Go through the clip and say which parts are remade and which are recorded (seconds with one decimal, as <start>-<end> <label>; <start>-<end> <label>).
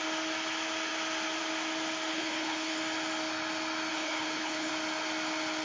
0.0-2.1 recorded; 2.1-2.8 remade; 2.8-3.9 recorded; 3.9-4.7 remade; 4.7-5.6 recorded